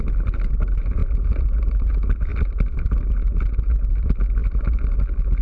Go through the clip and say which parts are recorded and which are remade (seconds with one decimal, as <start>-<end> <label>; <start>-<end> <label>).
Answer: 0.0-5.4 recorded